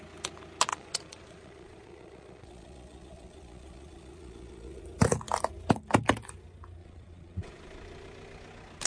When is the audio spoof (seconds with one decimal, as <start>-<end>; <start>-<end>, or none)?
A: 0.7-4.8; 6.8-7.5